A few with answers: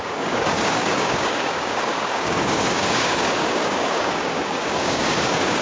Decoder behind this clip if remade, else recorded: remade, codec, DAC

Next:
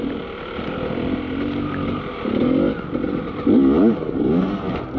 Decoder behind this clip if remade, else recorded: recorded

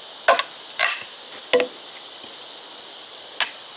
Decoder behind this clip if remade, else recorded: recorded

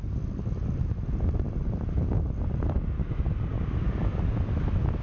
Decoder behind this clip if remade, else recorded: recorded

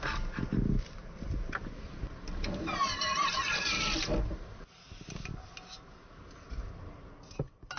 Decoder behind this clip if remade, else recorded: recorded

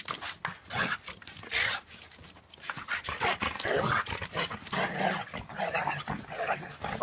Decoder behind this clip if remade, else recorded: recorded